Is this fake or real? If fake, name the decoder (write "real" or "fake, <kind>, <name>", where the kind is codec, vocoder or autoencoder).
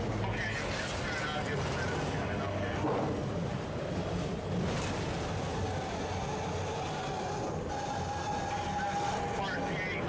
real